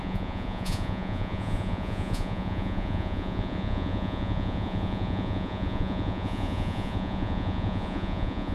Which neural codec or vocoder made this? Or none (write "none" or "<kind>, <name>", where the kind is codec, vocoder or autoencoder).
vocoder, Vocos